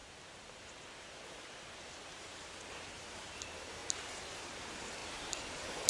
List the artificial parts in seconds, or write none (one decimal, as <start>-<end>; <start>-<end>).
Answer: 0.0-5.9